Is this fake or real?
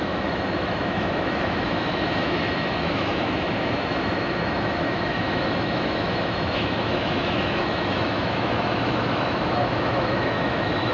fake